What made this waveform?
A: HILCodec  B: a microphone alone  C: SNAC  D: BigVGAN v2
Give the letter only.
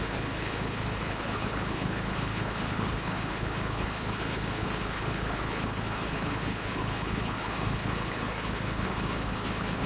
A